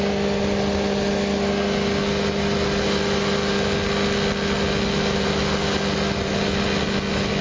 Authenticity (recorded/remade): recorded